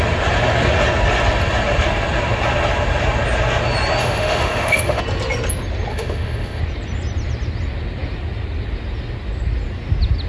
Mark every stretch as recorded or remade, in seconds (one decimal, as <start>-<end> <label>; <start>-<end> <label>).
0.0-4.0 recorded; 4.0-5.0 remade; 5.0-5.9 recorded; 5.9-6.6 remade; 6.6-10.3 recorded